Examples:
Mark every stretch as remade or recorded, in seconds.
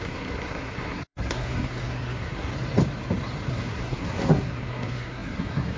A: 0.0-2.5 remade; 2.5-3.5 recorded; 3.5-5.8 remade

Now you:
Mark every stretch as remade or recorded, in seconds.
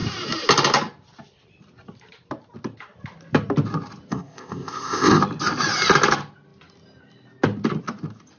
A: 0.0-4.1 recorded; 4.1-5.2 remade; 5.2-8.4 recorded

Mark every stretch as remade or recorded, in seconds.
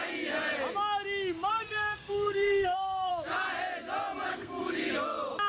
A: 0.0-1.5 recorded; 1.5-3.1 remade; 3.1-4.3 recorded; 4.3-4.9 remade; 4.9-5.5 recorded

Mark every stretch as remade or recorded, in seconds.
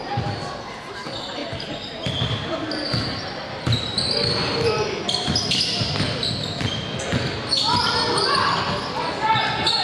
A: 0.0-9.8 recorded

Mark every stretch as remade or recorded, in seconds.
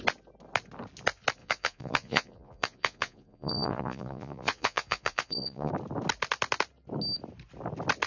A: 0.0-1.4 recorded; 1.4-5.7 remade; 5.7-8.1 recorded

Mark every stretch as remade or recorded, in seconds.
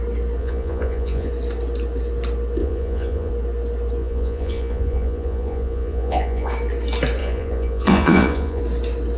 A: 0.0-0.4 recorded; 0.4-1.3 remade; 1.3-2.6 recorded; 2.6-3.3 remade; 3.3-4.0 recorded; 4.0-6.5 remade; 6.5-7.2 recorded; 7.2-8.6 remade; 8.6-9.2 recorded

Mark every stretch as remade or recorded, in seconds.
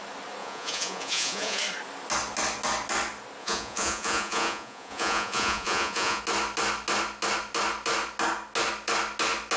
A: 0.0-0.4 recorded; 0.4-1.6 remade; 1.6-3.4 recorded; 3.4-6.2 remade; 6.2-9.6 recorded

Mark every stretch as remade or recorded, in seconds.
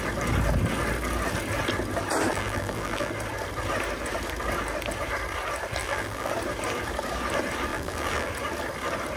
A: 0.0-2.3 recorded; 2.3-3.1 remade; 3.1-5.8 recorded; 5.8-6.3 remade; 6.3-7.7 recorded; 7.7-8.3 remade; 8.3-9.2 recorded